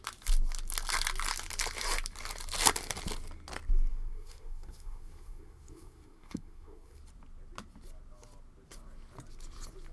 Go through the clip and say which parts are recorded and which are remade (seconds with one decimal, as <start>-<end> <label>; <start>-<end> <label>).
0.0-3.9 recorded; 3.9-7.0 remade; 7.0-9.9 recorded